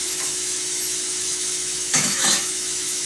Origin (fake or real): fake